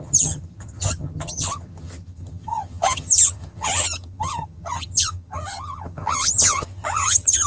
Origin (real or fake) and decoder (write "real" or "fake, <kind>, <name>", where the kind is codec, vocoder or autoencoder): fake, vocoder, HiFi-GAN